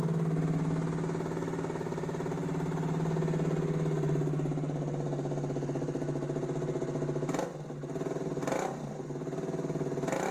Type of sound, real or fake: real